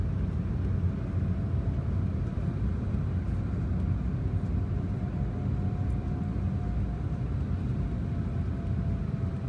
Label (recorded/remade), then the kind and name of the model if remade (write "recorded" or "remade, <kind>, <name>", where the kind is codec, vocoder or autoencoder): recorded